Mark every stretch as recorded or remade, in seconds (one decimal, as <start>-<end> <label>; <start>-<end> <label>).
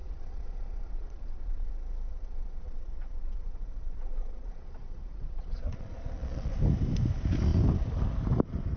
0.0-1.7 remade; 1.7-2.1 recorded; 2.1-6.5 remade; 6.5-8.8 recorded